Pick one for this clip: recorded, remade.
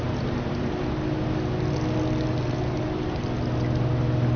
recorded